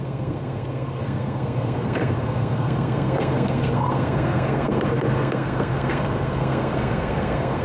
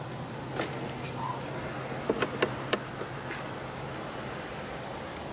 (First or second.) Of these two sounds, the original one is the second